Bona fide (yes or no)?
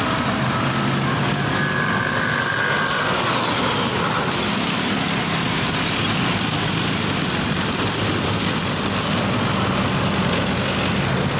yes